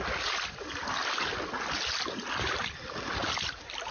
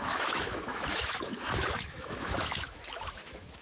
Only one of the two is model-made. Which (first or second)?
second